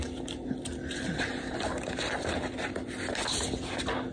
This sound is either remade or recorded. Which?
recorded